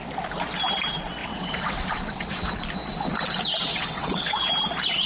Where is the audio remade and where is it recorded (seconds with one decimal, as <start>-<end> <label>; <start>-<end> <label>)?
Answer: 0.0-1.2 recorded; 1.2-2.5 remade; 2.5-3.7 recorded; 3.7-4.5 remade; 4.5-5.1 recorded